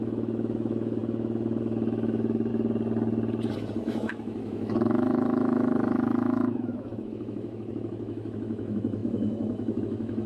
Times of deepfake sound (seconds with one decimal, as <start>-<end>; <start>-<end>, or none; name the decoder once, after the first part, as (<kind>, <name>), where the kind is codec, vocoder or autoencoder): 0.0-2.5 (autoencoder, DAC-VAE); 3.8-10.3